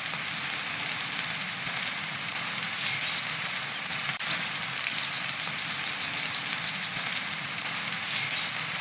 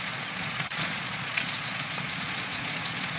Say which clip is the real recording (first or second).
first